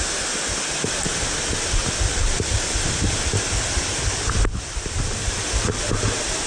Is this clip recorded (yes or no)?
yes